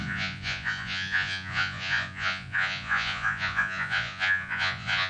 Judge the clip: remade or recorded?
remade